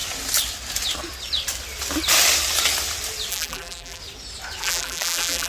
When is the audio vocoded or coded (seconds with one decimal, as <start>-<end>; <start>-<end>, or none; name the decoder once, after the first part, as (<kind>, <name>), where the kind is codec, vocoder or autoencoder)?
3.3-4.0 (vocoder, BigVGAN v2); 4.6-5.5